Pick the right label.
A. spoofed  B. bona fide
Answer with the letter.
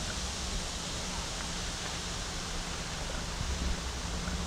B